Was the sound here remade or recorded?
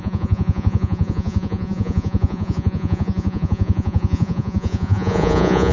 remade